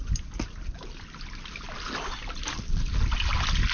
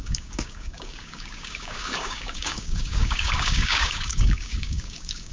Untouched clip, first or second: first